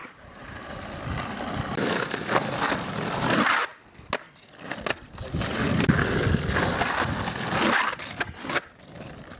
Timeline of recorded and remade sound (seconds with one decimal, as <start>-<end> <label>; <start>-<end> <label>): 0.0-3.7 remade; 3.7-6.3 recorded; 6.3-9.4 remade